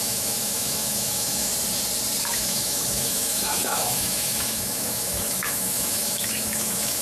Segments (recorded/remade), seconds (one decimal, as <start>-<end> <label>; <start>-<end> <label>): 0.0-1.5 remade; 1.5-2.2 recorded; 2.2-7.0 remade